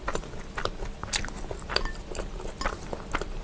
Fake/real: real